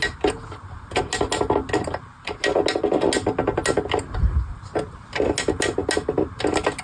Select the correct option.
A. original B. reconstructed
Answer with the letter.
A